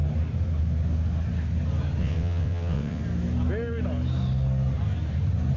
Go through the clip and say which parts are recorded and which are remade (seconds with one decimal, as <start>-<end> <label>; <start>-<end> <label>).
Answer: 0.0-2.0 recorded; 2.0-3.0 remade; 3.0-5.6 recorded